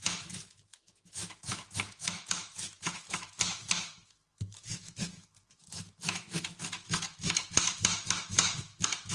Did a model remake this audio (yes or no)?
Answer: yes